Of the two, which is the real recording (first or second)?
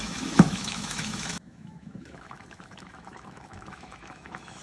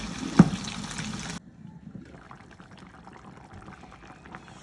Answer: second